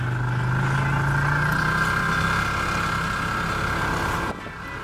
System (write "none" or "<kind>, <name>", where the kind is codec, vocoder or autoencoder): none